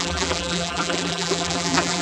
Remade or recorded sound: remade